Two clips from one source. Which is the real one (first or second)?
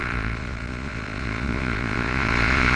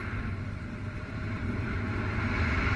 second